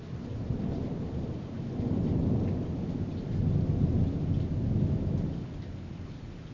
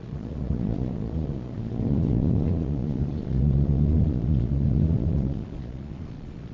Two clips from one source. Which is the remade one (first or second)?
second